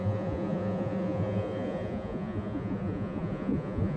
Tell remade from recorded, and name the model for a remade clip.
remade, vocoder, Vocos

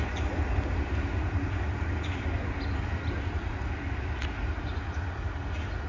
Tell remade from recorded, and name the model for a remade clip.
recorded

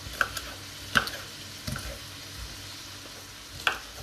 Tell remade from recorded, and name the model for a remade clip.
recorded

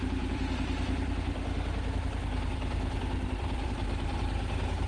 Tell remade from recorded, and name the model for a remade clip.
remade, vocoder, BigVGAN v2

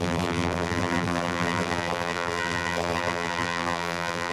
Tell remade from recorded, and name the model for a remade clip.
remade, vocoder, BigVGAN v2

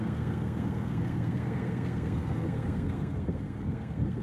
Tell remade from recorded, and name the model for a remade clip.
remade, codec, SNAC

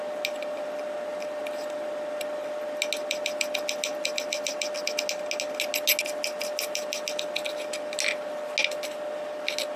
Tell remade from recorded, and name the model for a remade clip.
recorded